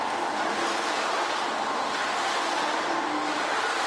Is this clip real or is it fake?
real